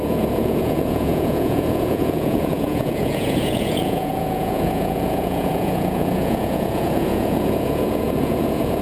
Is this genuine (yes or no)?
no